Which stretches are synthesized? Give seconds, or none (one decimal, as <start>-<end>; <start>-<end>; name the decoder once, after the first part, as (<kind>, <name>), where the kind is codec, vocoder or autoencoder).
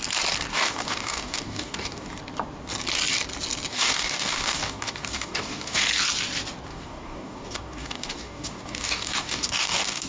0.5-2.1 (codec, DAC); 3.7-5.8; 6.7-10.1